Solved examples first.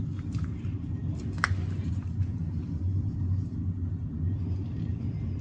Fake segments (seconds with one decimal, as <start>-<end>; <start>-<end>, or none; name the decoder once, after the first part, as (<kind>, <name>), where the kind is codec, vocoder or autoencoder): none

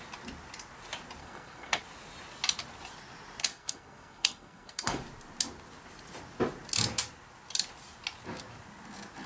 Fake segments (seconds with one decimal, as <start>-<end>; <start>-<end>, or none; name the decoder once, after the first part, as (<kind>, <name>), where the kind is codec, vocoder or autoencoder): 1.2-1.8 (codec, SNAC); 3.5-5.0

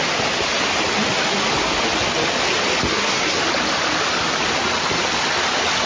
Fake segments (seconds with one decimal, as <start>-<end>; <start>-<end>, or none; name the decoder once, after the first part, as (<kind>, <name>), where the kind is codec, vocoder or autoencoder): 2.9-3.4 (codec, SNAC)

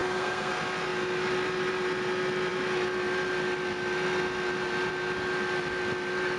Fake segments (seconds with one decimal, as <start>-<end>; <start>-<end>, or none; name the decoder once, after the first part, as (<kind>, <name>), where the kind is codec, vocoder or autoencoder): 0.0-0.5 (codec, SNAC)